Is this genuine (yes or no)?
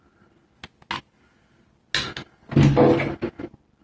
yes